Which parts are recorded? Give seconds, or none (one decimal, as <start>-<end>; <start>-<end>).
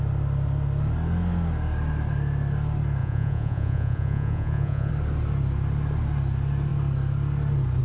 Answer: 0.0-3.0; 4.9-7.8